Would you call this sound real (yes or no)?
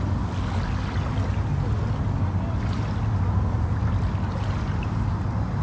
yes